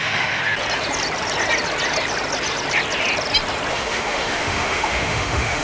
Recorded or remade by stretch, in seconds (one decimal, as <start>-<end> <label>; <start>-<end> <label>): 0.0-0.4 remade; 0.4-3.7 recorded; 3.7-5.6 remade